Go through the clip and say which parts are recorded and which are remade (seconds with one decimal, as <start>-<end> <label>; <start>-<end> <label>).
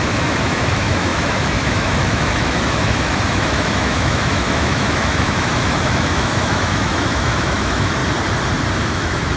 0.0-8.0 remade; 8.0-8.8 recorded; 8.8-9.4 remade